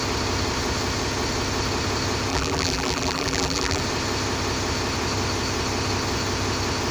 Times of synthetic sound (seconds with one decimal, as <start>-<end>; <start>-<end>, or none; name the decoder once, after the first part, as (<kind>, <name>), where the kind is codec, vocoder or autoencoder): 2.3-3.8 (vocoder, BigVGAN v2)